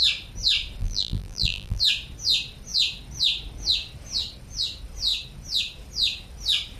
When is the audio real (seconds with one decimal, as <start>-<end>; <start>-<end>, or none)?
0.0-0.8; 1.8-6.8

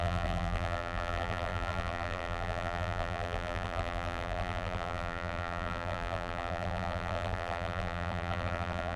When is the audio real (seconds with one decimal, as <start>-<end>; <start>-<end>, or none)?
none

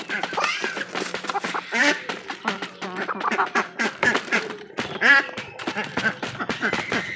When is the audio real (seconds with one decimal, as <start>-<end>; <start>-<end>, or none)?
0.0-1.8; 5.5-7.2

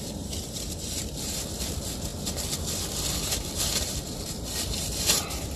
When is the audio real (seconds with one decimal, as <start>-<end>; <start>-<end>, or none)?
none

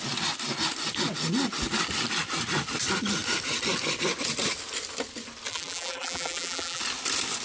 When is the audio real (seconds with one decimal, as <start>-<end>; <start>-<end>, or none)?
0.0-5.5; 6.8-7.4

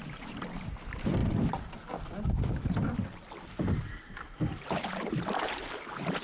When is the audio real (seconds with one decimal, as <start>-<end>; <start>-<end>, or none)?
none

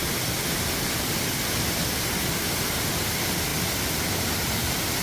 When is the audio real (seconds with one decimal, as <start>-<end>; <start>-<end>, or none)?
0.0-5.0